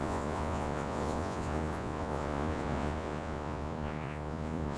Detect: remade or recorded remade